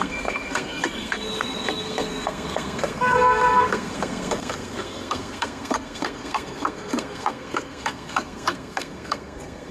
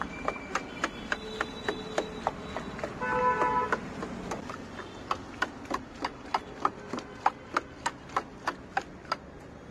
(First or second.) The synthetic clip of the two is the first